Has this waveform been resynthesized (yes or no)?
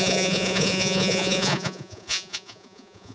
yes